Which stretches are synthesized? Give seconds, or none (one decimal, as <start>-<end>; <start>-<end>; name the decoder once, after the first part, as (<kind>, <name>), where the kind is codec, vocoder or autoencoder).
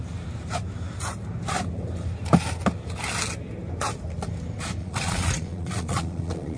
4.8-6.6 (vocoder, Vocos)